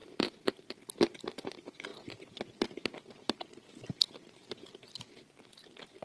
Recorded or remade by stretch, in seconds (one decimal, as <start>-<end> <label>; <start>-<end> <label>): 0.0-6.0 recorded